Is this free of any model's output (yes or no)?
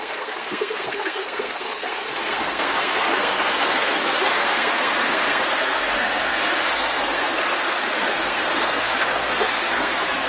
no